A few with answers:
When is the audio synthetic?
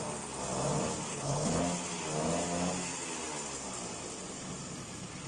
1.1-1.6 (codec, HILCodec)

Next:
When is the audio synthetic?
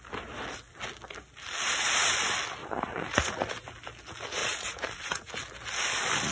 2.6-3.5 (vocoder, Vocos); 4.4-5.3